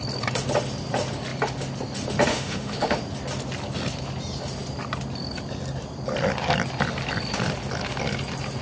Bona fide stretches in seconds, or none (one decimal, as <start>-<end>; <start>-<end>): 0.0-2.3; 3.0-8.6

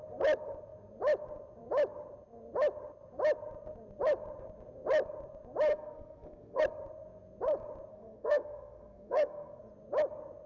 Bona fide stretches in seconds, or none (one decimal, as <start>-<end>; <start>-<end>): 0.0-5.7; 6.6-7.9; 9.6-10.5

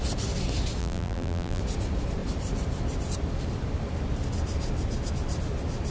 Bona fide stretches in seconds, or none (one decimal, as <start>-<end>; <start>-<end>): 0.0-0.8; 1.6-5.9

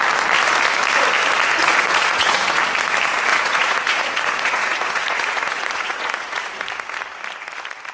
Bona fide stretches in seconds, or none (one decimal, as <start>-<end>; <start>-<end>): 0.0-1.6; 2.6-3.3; 6.7-7.9

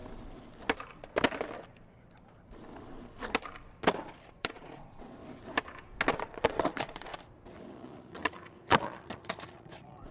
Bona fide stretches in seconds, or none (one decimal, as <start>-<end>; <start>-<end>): 0.0-4.3; 5.2-6.1; 7.1-7.7

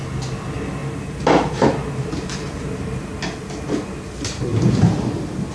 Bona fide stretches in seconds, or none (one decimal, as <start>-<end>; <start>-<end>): 0.0-0.8; 3.0-5.5

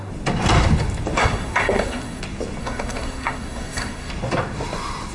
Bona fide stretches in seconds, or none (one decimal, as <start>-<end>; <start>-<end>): 0.0-1.2; 2.2-2.6; 4.1-5.1